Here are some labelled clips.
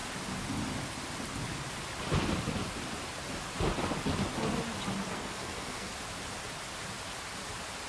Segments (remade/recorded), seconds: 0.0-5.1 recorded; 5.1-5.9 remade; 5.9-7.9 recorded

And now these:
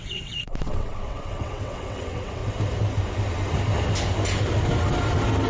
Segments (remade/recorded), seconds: 0.0-2.4 remade; 2.4-5.5 recorded

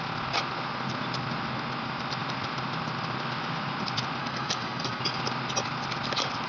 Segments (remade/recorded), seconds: 0.0-4.2 recorded; 4.2-5.0 remade; 5.0-6.5 recorded

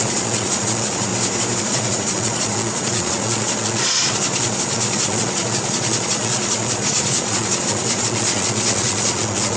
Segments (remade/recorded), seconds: 0.0-1.1 remade; 1.1-1.6 recorded; 1.6-9.6 remade